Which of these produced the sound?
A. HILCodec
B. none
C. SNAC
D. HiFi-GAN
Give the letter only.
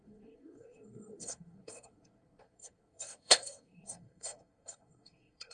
C